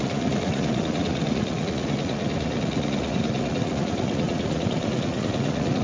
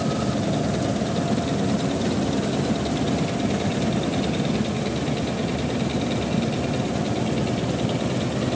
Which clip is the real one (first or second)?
second